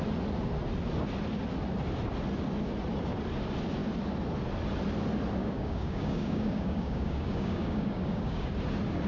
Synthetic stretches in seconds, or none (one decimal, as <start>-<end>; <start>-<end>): 5.4-8.5